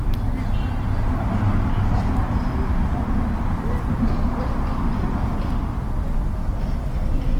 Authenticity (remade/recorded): recorded